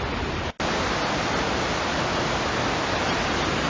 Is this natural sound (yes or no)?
yes